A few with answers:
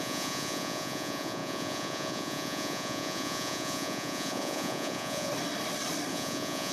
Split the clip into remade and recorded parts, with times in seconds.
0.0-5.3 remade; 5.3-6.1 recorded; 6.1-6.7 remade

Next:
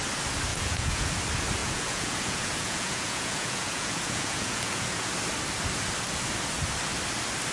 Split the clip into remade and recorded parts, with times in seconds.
0.0-0.5 recorded; 0.5-1.1 remade; 1.1-1.6 recorded; 1.6-5.1 remade; 5.1-7.5 recorded